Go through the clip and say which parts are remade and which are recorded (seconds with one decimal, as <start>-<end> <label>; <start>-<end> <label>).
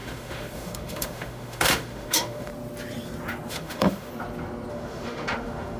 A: 0.0-2.5 remade; 2.5-3.5 recorded; 3.5-4.1 remade; 4.1-4.7 recorded; 4.7-5.8 remade